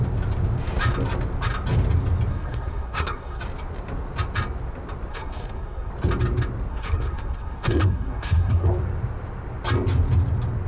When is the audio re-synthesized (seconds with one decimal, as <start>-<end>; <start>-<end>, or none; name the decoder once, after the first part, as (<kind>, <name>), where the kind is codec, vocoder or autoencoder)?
2.3-3.4 (codec, SNAC); 5.1-5.9; 6.7-8.7